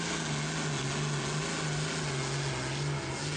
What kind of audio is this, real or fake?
real